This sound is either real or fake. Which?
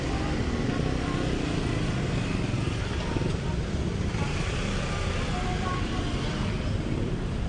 real